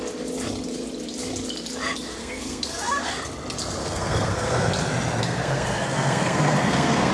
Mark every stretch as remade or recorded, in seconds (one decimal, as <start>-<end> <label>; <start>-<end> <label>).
0.0-2.2 recorded; 2.2-3.1 remade; 3.1-3.8 recorded; 3.8-4.7 remade; 4.7-5.2 recorded; 5.2-7.1 remade

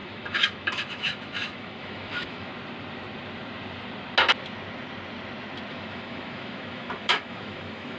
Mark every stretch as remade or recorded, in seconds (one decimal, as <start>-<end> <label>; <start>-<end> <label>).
0.0-2.5 remade; 2.5-5.7 recorded; 5.7-8.0 remade